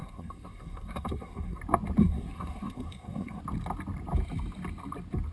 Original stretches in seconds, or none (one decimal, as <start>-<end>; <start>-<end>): 1.6-2.0; 3.4-5.3